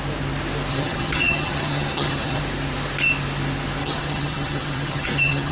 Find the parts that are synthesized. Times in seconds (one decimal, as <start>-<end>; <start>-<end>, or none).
0.7-2.4; 3.8-5.5